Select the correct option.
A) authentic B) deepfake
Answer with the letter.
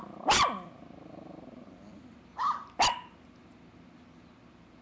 A